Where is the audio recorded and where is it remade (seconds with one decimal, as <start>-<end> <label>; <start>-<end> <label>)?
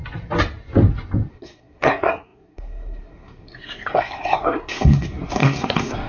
0.0-1.3 recorded; 1.3-6.1 remade